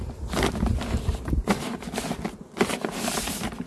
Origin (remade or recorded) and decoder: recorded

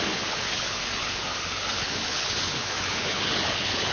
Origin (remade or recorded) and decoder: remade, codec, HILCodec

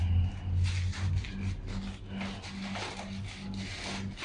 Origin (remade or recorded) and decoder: recorded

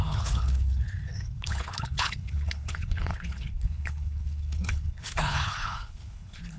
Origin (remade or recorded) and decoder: remade, codec, HILCodec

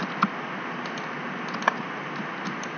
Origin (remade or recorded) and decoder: recorded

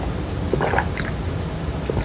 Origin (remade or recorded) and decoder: recorded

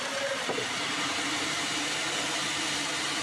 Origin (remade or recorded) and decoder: recorded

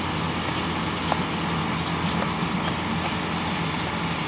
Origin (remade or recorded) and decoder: recorded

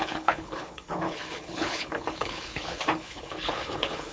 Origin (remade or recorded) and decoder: remade, codec, HILCodec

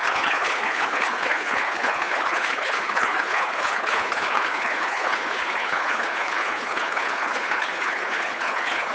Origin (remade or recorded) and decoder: remade, codec, HILCodec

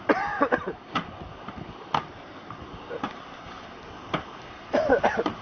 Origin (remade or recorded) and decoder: recorded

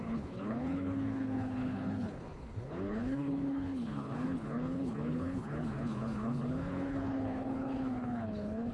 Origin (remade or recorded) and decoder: remade, codec, HILCodec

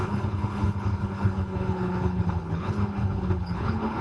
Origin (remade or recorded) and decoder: remade, codec, HILCodec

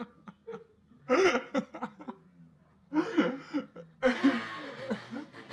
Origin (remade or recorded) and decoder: recorded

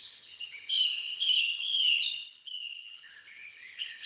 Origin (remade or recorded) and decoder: remade, codec, HILCodec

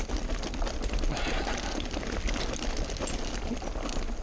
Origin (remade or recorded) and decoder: recorded